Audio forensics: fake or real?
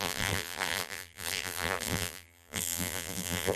fake